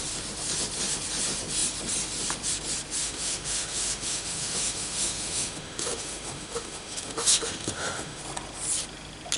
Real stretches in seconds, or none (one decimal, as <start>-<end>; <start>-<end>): 0.0-3.0; 8.2-9.4